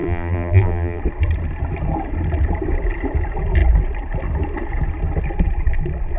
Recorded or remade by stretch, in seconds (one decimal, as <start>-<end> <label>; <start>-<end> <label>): 0.0-1.0 remade; 1.0-6.2 recorded